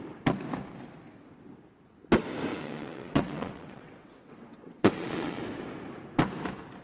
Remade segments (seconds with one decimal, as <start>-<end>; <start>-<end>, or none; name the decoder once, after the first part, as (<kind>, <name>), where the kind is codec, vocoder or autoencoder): 2.5-5.4 (vocoder, WaveNeXt)